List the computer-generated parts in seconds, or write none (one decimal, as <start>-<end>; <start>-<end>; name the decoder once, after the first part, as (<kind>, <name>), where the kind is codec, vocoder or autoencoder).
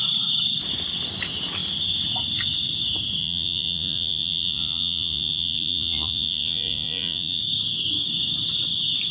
3.2-7.4 (vocoder, Vocos)